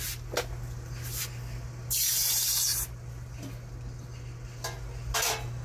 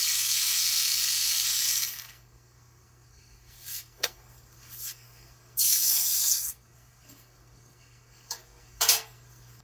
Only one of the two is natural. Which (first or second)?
first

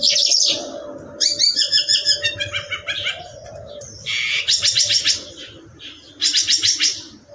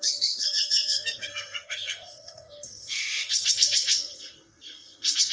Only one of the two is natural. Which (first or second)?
first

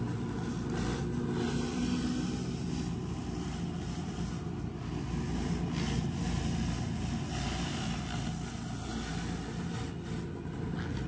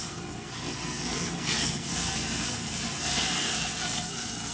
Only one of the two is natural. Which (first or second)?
first